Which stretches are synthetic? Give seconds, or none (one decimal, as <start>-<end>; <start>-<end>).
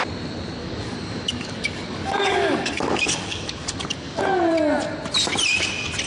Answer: 0.6-4.2